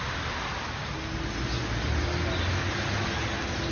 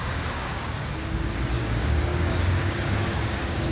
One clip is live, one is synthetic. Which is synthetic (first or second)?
second